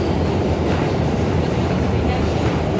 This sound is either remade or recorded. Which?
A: recorded